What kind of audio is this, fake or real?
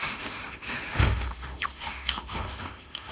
fake